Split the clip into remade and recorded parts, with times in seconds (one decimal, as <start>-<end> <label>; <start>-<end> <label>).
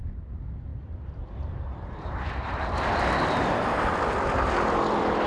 0.0-5.3 recorded